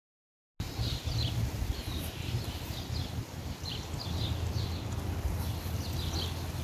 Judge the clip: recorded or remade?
recorded